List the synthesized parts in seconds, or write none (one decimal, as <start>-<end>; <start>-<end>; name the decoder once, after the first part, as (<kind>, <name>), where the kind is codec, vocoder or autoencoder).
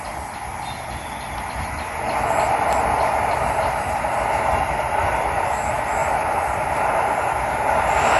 6.0-7.4 (vocoder, BigVGAN v2)